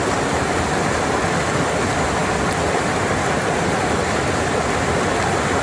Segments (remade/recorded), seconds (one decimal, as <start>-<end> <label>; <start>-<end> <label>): 0.0-5.6 recorded